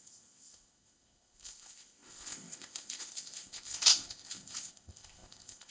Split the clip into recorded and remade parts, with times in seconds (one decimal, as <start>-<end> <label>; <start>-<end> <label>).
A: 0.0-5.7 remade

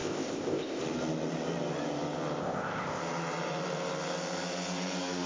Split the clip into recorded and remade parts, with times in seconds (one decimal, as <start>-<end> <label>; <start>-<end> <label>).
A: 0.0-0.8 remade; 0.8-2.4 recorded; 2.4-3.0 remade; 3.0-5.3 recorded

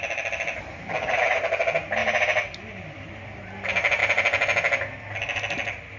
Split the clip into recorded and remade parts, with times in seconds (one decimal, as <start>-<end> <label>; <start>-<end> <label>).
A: 0.0-6.0 recorded